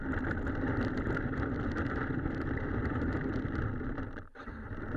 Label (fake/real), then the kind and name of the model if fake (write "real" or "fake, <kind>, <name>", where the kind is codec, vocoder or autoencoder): real